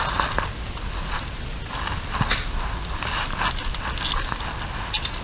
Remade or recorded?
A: recorded